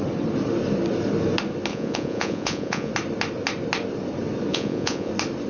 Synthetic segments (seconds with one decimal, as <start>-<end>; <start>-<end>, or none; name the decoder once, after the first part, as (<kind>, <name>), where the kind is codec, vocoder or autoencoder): 1.7-2.9 (vocoder, Vocos); 4.5-5.1